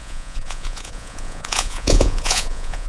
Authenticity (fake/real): fake